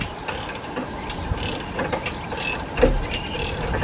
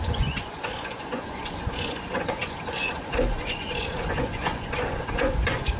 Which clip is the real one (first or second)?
first